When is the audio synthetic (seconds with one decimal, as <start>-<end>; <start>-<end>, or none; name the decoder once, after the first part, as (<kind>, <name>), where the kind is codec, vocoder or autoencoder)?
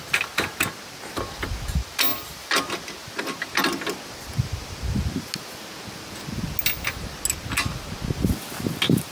none